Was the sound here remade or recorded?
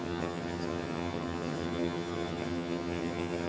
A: remade